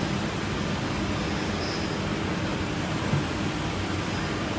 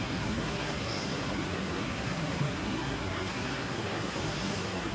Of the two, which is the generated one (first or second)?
second